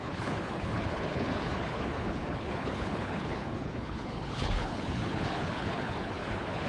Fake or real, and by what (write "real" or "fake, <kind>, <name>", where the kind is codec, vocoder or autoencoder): fake, codec, HILCodec